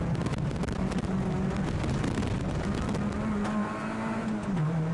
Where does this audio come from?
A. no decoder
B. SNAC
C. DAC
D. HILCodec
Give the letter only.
A